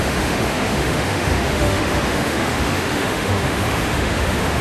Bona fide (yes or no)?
no